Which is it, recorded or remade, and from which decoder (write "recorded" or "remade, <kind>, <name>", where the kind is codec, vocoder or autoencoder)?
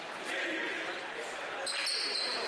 recorded